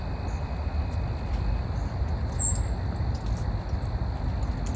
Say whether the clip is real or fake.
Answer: real